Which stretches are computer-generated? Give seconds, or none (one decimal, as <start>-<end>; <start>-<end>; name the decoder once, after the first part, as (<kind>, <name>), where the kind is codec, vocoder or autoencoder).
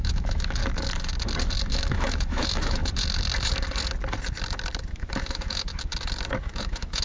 0.0-0.6 (autoencoder, DAC-VAE); 1.7-2.8; 4.9-5.7; 6.4-7.0